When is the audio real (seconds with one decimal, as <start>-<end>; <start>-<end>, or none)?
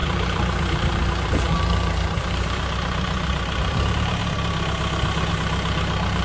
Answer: 4.2-5.3